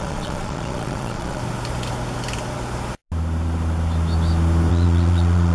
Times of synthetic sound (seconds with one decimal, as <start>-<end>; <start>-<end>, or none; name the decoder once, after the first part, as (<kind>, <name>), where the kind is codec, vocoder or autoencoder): 0.0-1.4 (vocoder, Vocos); 4.7-5.5